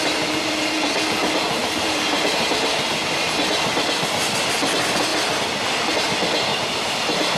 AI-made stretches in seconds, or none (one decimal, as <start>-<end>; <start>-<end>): 1.6-4.0; 6.5-7.4